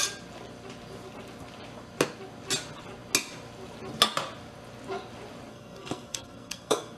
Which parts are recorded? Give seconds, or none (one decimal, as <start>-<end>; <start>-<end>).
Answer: 0.0-5.5